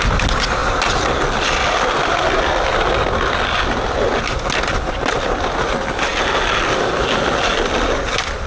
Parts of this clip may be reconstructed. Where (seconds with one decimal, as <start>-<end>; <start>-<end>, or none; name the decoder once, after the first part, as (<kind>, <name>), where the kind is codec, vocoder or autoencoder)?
none